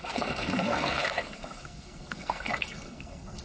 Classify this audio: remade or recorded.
remade